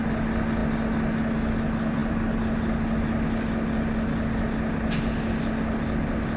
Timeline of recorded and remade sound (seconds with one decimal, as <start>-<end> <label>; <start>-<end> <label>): 0.0-6.4 recorded